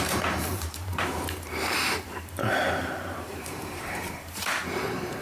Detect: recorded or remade remade